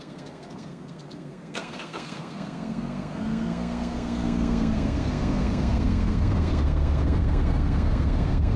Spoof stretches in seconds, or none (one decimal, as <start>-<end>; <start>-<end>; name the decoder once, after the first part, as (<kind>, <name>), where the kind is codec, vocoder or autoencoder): 0.0-8.6 (codec, SNAC)